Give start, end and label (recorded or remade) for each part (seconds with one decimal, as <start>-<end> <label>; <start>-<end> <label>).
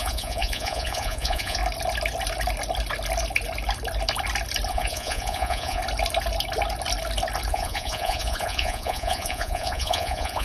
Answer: 0.0-1.6 remade; 1.6-4.7 recorded; 4.7-5.8 remade; 5.8-7.5 recorded; 7.5-10.4 remade